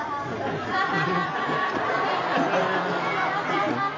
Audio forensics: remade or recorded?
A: recorded